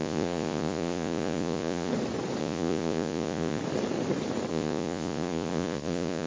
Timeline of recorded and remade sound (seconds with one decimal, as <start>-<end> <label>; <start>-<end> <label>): 0.0-1.9 remade; 1.9-2.4 recorded; 2.4-3.6 remade; 3.6-4.5 recorded; 4.5-6.3 remade